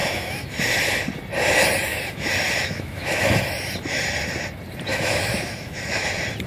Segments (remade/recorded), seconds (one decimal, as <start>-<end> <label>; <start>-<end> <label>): 0.0-0.6 remade; 0.6-1.9 recorded; 1.9-3.4 remade; 3.4-4.9 recorded; 4.9-6.1 remade; 6.1-6.5 recorded